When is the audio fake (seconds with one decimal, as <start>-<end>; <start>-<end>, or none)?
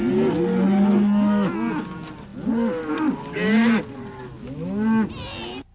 none